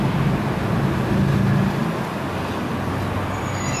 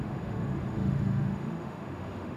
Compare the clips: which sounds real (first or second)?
first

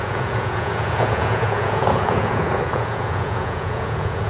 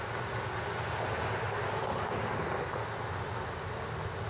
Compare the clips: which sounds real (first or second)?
second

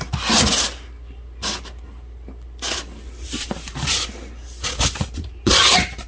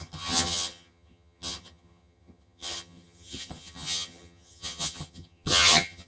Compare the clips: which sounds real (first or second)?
first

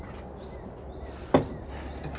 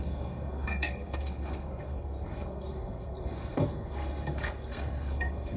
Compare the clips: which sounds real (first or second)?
first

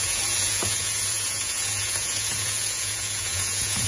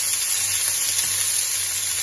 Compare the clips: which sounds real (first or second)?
second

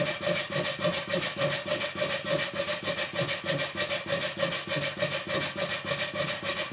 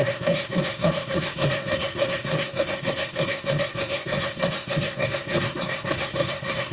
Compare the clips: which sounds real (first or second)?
first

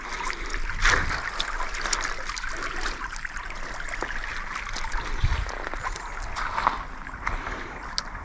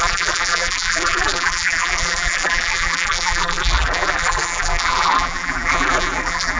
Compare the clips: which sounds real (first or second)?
first